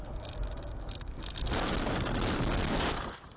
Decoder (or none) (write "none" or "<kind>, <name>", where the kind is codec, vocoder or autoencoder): none